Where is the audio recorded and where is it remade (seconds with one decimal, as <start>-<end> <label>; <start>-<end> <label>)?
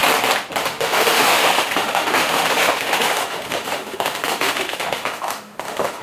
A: 0.0-0.6 recorded; 0.6-6.0 remade